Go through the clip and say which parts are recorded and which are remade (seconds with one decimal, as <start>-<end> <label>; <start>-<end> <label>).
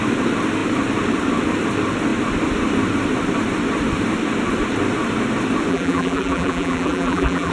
0.0-5.7 recorded; 5.7-7.5 remade